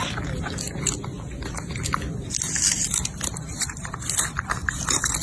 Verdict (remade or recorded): recorded